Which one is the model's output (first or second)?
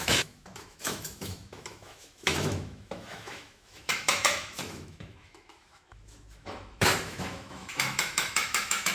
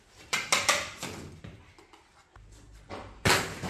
first